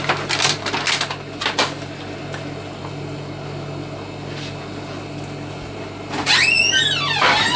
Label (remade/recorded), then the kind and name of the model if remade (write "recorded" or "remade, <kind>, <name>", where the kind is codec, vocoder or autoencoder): recorded